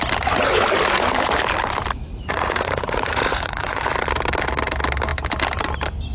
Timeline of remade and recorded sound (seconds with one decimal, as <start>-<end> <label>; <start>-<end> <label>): 0.0-2.1 recorded; 2.1-3.9 remade; 3.9-6.1 recorded